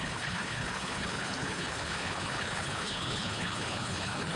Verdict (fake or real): fake